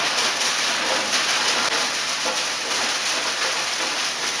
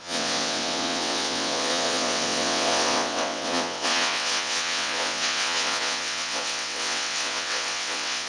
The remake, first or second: second